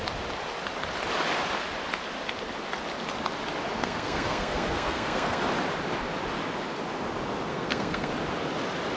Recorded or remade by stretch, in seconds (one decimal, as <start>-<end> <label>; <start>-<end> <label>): 0.0-3.8 recorded; 3.8-5.4 remade; 5.4-7.5 recorded; 7.5-8.1 remade; 8.1-9.0 recorded